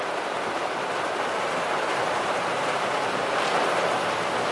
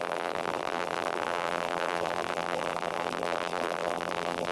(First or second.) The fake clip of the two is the second